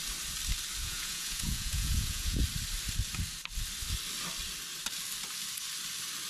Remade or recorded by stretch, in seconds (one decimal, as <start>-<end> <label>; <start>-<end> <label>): 0.0-0.8 recorded; 0.8-2.4 remade; 2.4-6.3 recorded